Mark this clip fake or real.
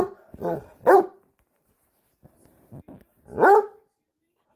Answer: real